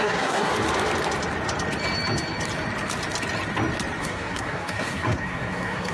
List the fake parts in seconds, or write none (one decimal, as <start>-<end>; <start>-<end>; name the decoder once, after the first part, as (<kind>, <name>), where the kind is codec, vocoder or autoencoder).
0.0-0.5 (codec, SNAC); 4.0-5.9